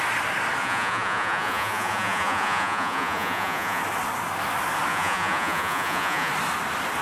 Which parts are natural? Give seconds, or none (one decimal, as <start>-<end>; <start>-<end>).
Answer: 0.0-0.6; 3.8-4.9; 6.3-7.0